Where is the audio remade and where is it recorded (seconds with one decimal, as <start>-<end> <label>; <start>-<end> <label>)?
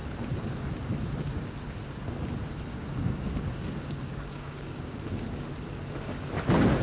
0.0-2.7 recorded; 2.7-5.1 remade; 5.1-6.8 recorded